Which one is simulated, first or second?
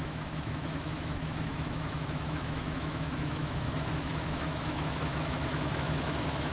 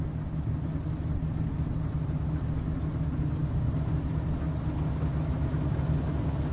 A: first